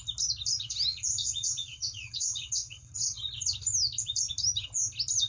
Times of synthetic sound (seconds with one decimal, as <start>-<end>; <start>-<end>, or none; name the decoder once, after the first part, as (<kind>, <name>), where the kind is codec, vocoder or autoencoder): 0.9-2.9 (vocoder, WaveNeXt)